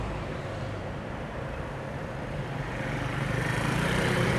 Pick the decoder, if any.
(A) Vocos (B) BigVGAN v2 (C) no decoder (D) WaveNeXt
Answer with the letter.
B